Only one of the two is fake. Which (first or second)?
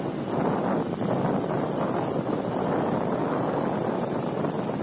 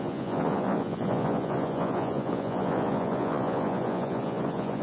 second